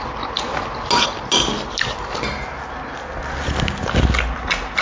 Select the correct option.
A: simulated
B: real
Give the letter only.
B